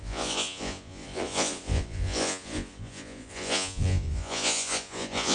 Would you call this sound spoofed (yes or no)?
yes